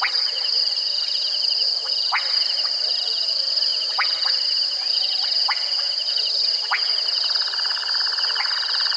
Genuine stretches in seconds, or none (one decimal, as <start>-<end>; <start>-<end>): 3.7-8.4